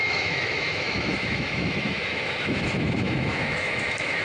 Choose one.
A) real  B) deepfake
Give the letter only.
B